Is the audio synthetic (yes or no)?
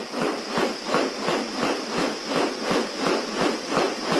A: no